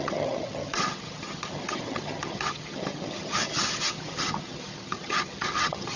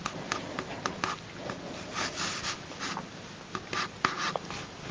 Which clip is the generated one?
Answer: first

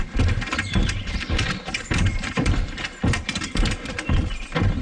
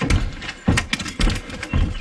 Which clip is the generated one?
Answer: first